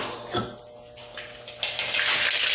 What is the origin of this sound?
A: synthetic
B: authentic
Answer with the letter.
B